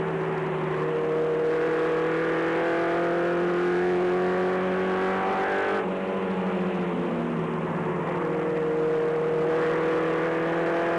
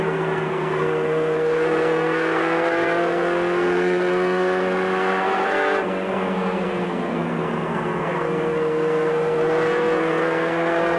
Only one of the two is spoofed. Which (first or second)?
second